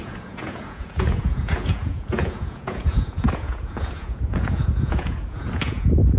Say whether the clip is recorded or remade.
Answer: remade